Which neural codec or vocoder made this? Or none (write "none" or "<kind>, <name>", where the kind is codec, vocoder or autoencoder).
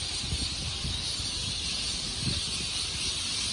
none